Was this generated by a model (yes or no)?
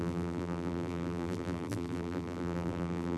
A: yes